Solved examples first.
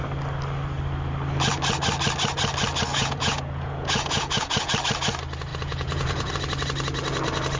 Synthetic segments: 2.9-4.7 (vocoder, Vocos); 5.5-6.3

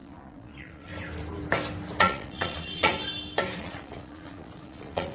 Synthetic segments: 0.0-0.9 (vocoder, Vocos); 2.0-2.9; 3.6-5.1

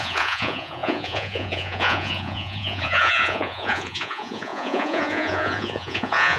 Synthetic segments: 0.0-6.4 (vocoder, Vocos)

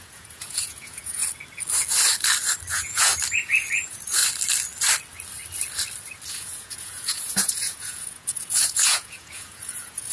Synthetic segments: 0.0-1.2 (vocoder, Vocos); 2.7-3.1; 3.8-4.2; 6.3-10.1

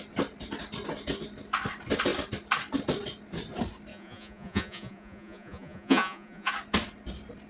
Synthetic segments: 3.9-6.5 (vocoder, Vocos)

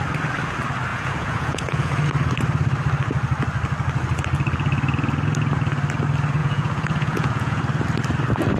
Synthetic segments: 0.9-1.9 (vocoder, Vocos); 6.4-7.6

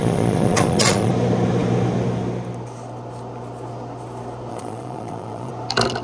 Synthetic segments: 0.0-1.1 (vocoder, Vocos); 4.5-5.5